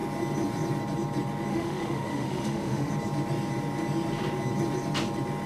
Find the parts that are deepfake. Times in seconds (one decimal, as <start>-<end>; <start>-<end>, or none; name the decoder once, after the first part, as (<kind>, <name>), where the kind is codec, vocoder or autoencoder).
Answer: 1.5-2.9 (autoencoder, DAC-VAE)